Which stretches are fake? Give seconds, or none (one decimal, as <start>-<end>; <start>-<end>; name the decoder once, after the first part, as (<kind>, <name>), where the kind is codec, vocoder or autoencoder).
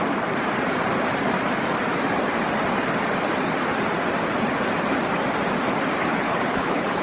6.0-7.0 (codec, HILCodec)